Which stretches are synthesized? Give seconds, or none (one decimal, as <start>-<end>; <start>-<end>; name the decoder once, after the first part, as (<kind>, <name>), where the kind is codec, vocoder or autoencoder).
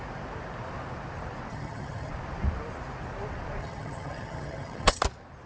1.5-2.1 (vocoder, HiFi-GAN); 3.6-5.0